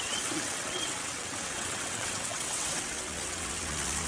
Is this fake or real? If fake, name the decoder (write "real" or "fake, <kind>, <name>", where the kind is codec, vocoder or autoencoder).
fake, vocoder, WaveNeXt